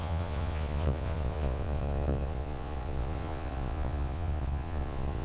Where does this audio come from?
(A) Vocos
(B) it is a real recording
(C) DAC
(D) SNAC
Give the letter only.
A